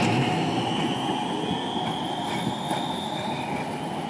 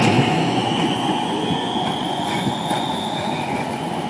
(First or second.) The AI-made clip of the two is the second